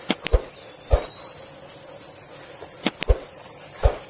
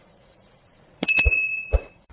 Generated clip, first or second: second